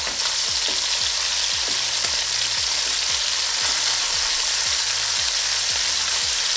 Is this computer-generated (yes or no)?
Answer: no